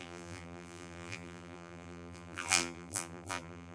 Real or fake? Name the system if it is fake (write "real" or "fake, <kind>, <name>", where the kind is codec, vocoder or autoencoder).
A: fake, vocoder, BigVGAN v2